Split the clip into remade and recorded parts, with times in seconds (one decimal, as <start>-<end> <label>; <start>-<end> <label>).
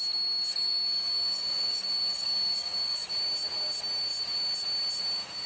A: 0.0-0.5 recorded; 0.5-3.1 remade; 3.1-5.5 recorded